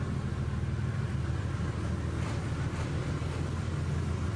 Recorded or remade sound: recorded